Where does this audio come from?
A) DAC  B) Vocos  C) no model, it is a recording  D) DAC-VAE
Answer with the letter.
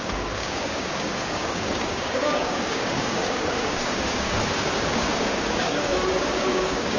A